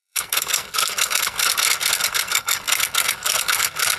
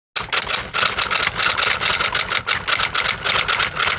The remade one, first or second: first